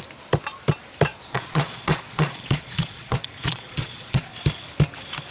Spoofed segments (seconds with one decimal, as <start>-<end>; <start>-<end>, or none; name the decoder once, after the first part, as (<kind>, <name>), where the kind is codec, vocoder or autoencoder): 1.1-4.3 (vocoder, Vocos)

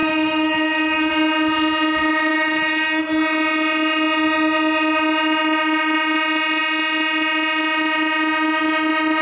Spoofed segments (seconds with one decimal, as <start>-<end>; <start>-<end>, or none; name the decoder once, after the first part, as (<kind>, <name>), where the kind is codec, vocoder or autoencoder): 0.0-1.1 (autoencoder, DAC-VAE); 2.3-3.0

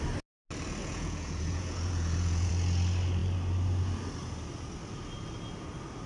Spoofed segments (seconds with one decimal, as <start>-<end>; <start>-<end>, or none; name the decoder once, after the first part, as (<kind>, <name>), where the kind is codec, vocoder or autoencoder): 0.8-2.5 (vocoder, Vocos)

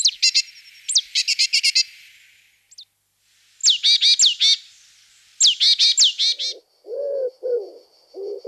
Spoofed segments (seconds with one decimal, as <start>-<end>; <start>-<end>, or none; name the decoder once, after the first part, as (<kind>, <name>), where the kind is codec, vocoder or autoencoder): 1.1-1.6 (vocoder, BigVGAN v2)

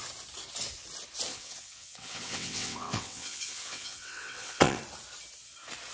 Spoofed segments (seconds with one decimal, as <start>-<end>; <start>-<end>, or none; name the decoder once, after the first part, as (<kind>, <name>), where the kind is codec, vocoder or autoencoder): 1.3-4.8 (vocoder, WaveNeXt)

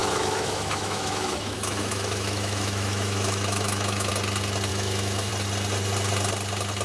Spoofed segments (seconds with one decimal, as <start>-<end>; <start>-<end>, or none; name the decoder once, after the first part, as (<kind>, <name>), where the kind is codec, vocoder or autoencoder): 0.0-4.1 (autoencoder, DAC-VAE); 4.7-5.3

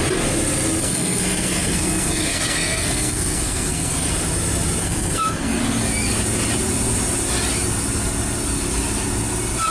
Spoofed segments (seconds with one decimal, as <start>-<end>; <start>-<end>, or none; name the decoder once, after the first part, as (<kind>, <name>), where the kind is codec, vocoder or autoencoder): 0.8-4.1 (codec, SNAC); 4.8-5.6